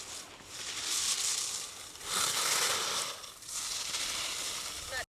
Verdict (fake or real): real